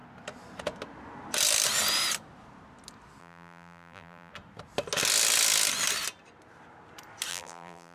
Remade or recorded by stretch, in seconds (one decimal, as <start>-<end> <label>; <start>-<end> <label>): 0.0-3.2 recorded; 3.2-4.3 remade; 4.3-7.3 recorded; 7.3-7.9 remade